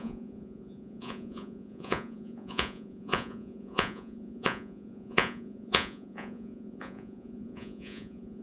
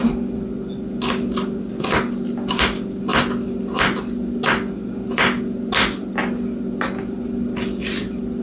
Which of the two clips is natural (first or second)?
second